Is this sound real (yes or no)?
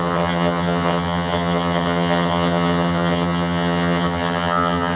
no